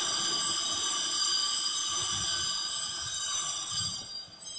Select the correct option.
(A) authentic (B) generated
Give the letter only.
A